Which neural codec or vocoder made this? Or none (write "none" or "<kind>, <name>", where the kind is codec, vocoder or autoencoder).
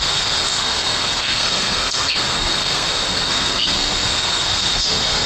codec, SNAC